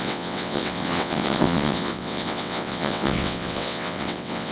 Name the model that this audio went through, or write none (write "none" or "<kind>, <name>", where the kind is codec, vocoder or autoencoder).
vocoder, WaveNeXt